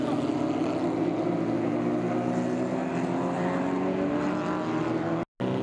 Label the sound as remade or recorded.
recorded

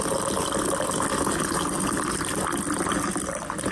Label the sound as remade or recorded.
recorded